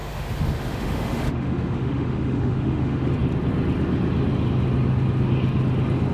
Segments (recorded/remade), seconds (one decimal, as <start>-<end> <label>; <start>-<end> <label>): 0.0-3.1 remade; 3.1-6.1 recorded